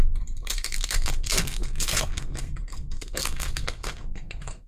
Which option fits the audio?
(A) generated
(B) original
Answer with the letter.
A